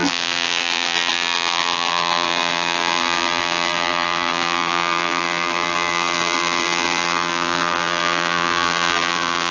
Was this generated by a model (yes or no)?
yes